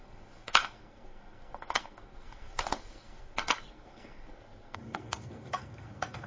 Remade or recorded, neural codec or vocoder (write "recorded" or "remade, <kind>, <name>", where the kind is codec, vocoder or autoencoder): remade, codec, SNAC